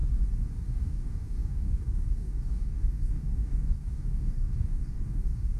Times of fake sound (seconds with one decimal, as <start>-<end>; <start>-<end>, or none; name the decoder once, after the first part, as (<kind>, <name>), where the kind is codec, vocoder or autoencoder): 0.7-5.6 (codec, DAC)